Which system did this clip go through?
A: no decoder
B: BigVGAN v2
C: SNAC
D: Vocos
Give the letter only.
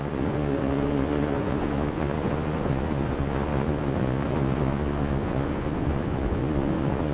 D